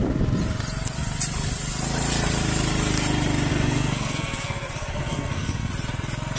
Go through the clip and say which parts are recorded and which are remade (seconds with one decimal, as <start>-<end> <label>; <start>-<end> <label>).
0.0-3.5 recorded; 3.5-5.7 remade; 5.7-6.4 recorded